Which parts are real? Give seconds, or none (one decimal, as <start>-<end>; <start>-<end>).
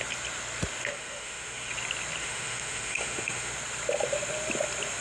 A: 0.0-0.9; 1.7-2.2; 3.5-5.0